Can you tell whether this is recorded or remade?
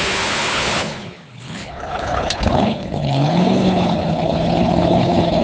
remade